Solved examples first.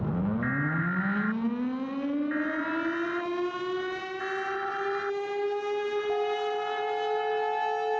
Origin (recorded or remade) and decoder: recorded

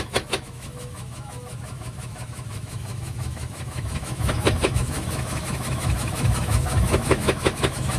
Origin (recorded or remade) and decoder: remade, autoencoder, DAC-VAE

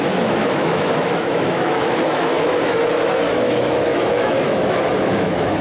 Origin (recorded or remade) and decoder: remade, autoencoder, DAC-VAE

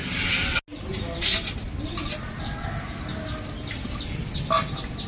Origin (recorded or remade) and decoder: recorded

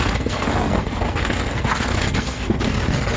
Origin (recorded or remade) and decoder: remade, codec, SNAC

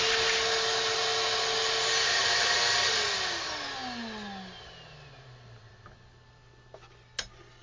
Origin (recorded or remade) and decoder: recorded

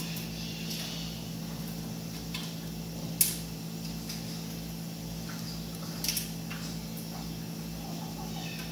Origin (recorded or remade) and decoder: recorded